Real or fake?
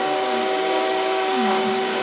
fake